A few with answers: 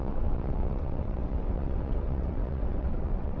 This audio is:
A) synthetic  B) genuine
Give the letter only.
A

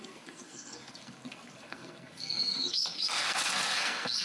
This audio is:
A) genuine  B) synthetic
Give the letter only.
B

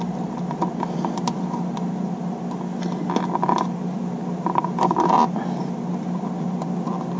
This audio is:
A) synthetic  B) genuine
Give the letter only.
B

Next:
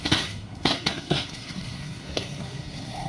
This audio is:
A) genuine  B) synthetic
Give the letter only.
B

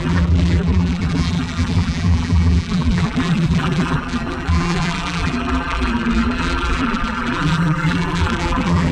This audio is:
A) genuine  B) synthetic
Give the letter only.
B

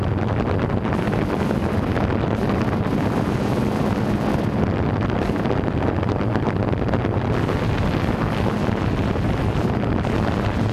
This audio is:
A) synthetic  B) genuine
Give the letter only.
B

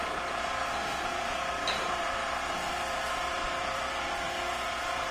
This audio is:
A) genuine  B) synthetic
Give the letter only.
B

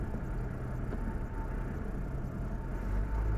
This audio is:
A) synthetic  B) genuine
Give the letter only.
B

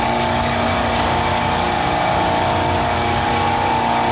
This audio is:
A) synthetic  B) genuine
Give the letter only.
A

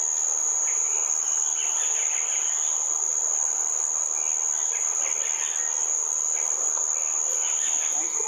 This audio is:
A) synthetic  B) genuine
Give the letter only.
B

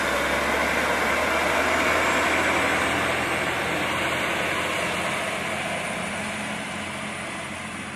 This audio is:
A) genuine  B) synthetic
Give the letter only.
A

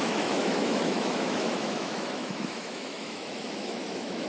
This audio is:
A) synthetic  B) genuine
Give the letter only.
A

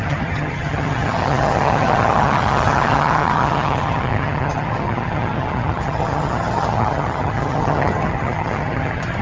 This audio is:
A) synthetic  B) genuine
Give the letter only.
A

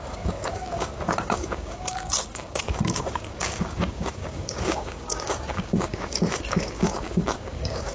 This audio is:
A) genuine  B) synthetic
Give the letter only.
B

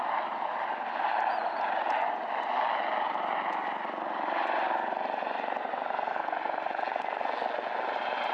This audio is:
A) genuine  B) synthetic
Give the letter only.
A